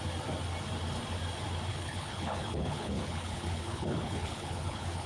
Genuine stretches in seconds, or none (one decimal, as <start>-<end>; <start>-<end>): 0.0-1.7